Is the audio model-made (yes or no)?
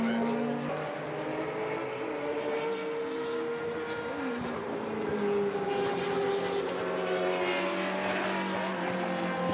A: no